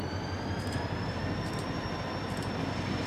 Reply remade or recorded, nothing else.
remade